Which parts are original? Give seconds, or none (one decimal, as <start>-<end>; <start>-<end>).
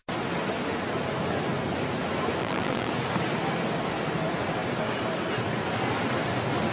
0.0-2.4; 2.9-6.7